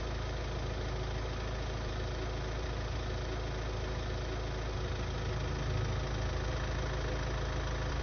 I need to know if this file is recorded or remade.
recorded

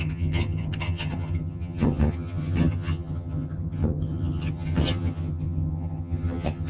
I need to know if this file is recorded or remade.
remade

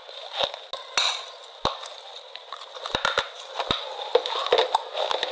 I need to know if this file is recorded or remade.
recorded